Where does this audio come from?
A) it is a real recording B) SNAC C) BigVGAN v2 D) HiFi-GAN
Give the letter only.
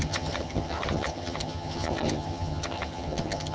D